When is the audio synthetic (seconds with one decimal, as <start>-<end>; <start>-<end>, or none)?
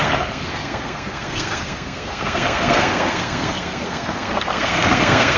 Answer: 0.0-5.4